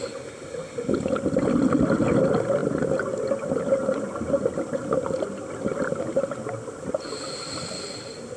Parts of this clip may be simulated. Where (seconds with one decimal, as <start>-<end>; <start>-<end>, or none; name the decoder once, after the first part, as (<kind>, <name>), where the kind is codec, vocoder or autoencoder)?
none